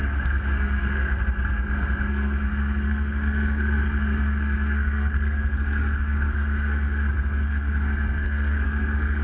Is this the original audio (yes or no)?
no